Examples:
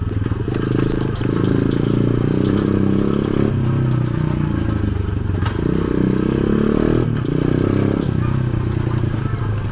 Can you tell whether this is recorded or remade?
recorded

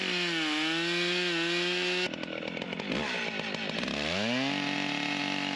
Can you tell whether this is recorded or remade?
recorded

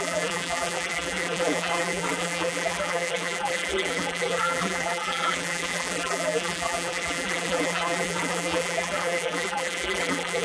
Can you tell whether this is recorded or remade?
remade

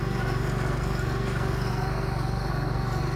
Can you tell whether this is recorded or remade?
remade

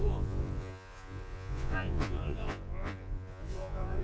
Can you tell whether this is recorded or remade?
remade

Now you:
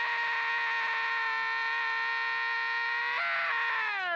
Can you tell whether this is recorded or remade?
recorded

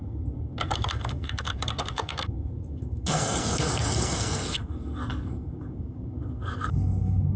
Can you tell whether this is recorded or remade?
remade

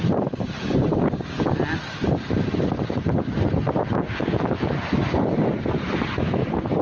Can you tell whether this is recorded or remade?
recorded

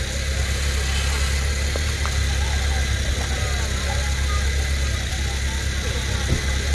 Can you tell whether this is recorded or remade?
recorded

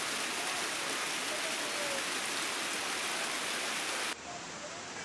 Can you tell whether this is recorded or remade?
recorded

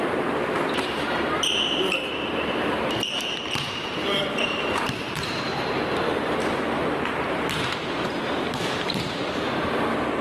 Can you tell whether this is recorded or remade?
remade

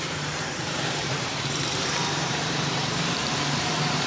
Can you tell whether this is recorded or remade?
remade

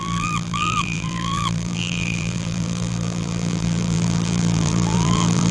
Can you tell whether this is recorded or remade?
remade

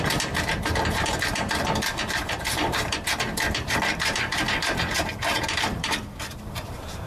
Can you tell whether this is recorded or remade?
remade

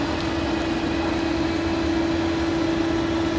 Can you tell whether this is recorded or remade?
recorded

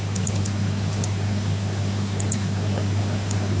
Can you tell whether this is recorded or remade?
remade